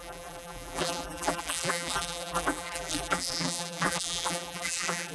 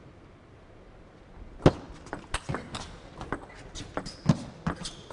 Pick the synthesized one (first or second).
first